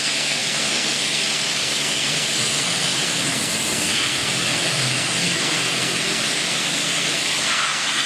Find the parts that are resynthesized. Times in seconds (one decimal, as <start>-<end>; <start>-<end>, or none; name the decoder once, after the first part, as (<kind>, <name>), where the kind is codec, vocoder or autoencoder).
0.0-8.1 (codec, SNAC)